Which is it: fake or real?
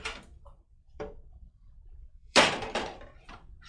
fake